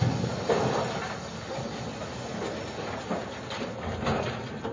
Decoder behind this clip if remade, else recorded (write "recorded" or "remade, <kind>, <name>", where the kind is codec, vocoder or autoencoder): recorded